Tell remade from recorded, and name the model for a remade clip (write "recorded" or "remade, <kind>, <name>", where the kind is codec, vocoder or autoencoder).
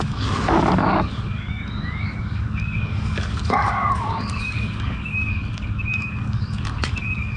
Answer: remade, codec, DAC